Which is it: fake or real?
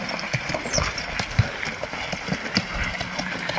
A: real